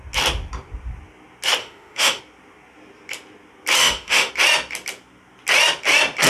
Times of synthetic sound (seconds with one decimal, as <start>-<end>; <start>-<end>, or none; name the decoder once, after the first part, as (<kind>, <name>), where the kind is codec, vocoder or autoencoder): 1.6-2.2 (autoencoder, DAC-VAE); 3.8-4.3